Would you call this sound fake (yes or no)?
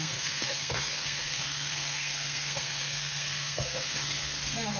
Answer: yes